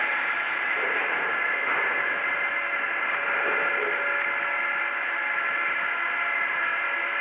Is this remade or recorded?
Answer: recorded